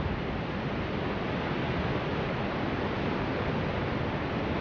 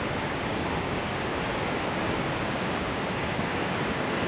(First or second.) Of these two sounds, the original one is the first